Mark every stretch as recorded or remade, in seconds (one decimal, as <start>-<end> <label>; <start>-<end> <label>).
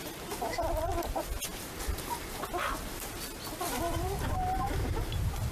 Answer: 0.0-5.5 recorded